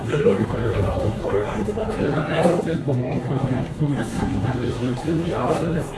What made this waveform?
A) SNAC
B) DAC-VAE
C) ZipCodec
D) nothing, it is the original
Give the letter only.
A